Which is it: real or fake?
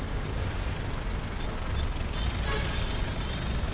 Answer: real